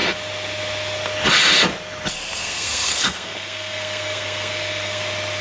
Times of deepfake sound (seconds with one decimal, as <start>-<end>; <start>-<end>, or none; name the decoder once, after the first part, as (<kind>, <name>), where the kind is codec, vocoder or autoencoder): 2.4-5.0 (codec, SNAC)